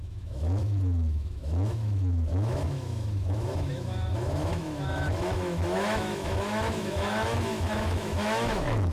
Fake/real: fake